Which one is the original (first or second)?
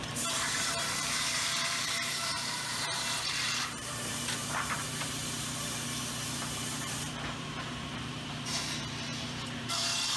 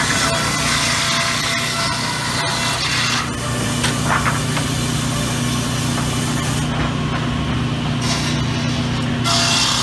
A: second